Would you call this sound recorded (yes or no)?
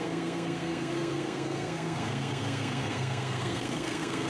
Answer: no